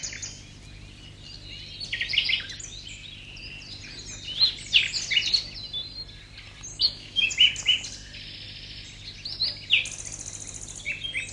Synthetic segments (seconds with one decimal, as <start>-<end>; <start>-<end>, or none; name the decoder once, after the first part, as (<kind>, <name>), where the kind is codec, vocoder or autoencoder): 6.7-7.3 (autoencoder, DAC-VAE)